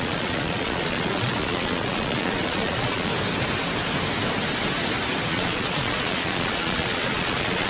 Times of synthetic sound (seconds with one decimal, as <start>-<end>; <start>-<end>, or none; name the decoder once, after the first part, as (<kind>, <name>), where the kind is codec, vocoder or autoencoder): 0.0-3.1 (vocoder, Vocos); 5.3-7.7